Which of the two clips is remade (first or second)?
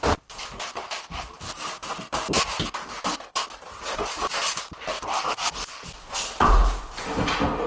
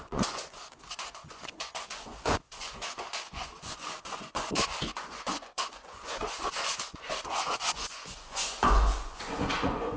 second